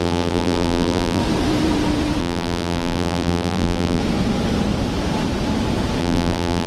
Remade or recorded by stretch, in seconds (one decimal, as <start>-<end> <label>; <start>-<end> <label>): 0.0-1.2 remade; 1.2-2.2 recorded; 2.2-4.0 remade; 4.0-6.0 recorded; 6.0-6.7 remade